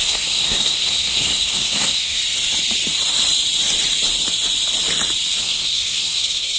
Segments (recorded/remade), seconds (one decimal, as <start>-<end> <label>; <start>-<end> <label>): 0.0-2.2 remade; 2.2-5.4 recorded; 5.4-6.6 remade